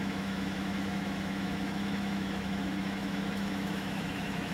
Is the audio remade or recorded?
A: remade